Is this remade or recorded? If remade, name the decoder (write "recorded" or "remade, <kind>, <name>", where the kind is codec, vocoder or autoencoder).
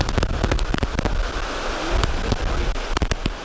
recorded